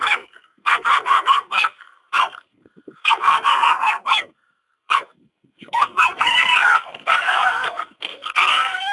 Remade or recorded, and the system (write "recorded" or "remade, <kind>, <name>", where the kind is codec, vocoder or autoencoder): remade, codec, SNAC